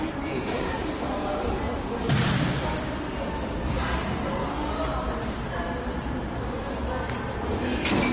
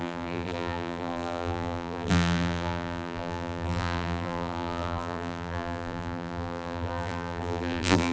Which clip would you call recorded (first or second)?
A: first